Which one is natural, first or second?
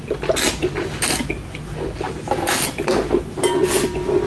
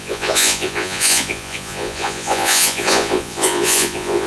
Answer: first